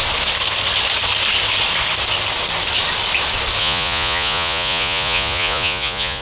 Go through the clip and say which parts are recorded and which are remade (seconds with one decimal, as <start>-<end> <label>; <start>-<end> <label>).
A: 0.0-3.6 recorded; 3.6-6.2 remade